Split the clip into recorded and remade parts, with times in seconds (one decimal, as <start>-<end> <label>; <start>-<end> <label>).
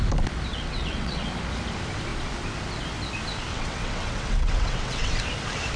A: 0.0-0.5 recorded; 0.5-1.3 remade; 1.3-3.5 recorded; 3.5-5.1 remade; 5.1-5.8 recorded